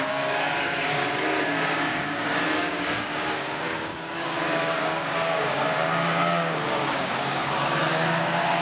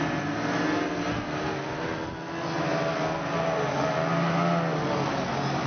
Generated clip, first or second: first